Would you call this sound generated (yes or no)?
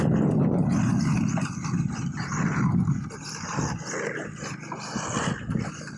no